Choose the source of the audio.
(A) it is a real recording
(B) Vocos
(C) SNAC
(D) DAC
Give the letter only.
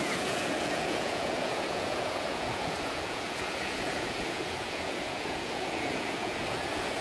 B